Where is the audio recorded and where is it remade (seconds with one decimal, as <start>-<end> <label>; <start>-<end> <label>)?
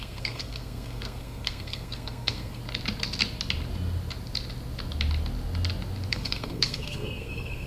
0.0-2.6 remade; 2.6-6.1 recorded; 6.1-7.7 remade